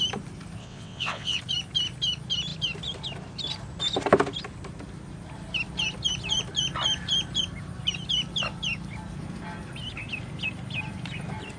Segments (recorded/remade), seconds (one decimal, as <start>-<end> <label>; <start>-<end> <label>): 0.0-0.6 recorded; 0.6-1.4 remade; 1.4-11.6 recorded